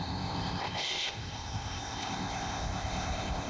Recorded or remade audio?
remade